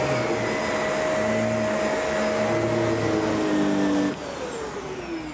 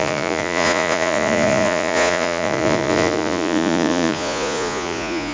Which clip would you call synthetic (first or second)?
second